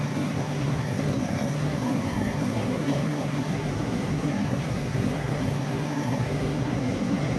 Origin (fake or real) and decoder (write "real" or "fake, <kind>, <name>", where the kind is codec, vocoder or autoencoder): fake, codec, SNAC